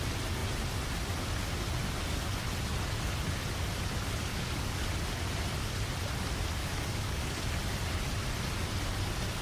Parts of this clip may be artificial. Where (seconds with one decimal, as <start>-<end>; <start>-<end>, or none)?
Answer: 4.3-4.9; 6.6-7.4